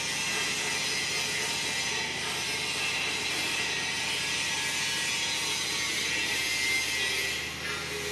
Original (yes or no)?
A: yes